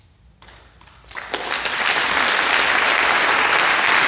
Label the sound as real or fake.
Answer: real